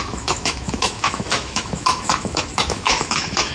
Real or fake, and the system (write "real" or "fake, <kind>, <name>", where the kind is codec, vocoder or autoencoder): fake, autoencoder, DAC-VAE